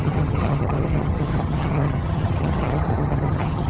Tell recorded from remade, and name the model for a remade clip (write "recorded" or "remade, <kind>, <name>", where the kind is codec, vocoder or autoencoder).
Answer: remade, vocoder, HiFi-GAN